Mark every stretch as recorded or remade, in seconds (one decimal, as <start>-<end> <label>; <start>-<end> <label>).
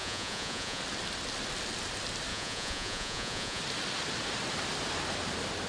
0.0-0.8 remade; 0.8-2.3 recorded; 2.3-3.6 remade; 3.6-5.7 recorded